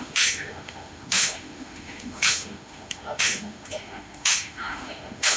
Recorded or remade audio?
remade